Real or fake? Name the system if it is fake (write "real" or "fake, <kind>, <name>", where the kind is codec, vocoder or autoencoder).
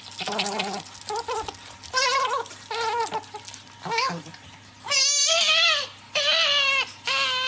real